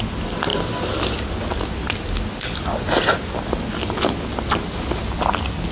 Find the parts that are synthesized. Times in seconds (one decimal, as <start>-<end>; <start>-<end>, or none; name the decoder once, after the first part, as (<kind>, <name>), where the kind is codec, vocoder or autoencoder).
none